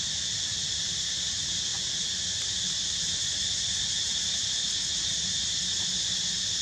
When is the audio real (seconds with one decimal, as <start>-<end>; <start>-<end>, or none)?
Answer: 0.0-6.6